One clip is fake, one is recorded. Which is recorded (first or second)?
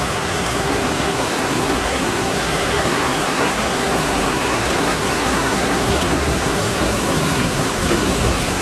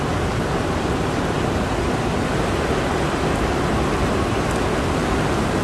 second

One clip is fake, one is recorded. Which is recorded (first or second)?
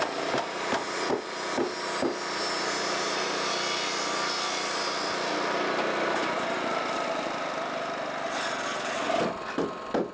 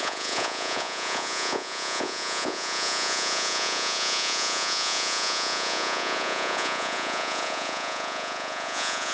first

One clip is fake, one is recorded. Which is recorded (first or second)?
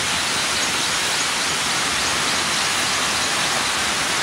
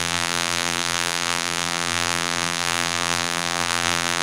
first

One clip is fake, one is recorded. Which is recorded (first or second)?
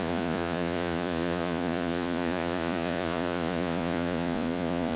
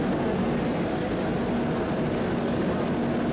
second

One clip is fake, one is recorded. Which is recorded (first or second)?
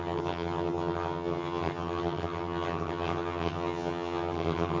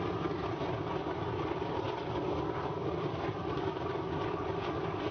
second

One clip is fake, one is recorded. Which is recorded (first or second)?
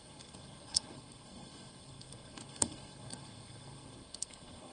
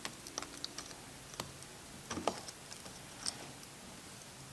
second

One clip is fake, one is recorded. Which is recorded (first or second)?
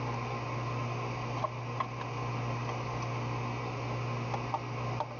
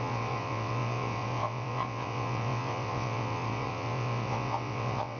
first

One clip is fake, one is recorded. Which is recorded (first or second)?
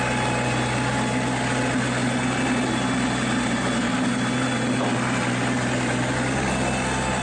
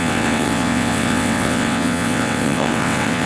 first